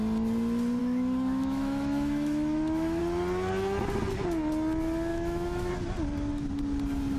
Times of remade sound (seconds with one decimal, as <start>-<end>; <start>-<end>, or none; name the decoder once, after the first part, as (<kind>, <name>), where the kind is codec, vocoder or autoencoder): 0.8-3.0 (autoencoder, DAC-VAE); 5.1-5.7